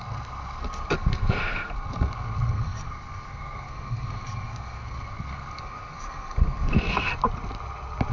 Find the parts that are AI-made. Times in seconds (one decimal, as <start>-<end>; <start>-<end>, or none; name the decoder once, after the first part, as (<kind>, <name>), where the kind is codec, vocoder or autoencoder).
0.0-7.1 (codec, SNAC)